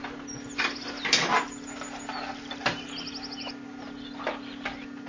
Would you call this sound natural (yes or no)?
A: yes